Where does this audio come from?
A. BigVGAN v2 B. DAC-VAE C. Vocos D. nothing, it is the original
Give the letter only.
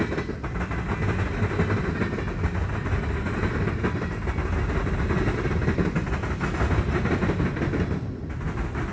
D